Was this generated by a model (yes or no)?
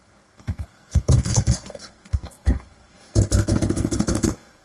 yes